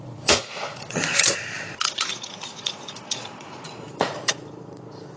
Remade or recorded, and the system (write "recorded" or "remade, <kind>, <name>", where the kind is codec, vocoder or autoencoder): remade, vocoder, Vocos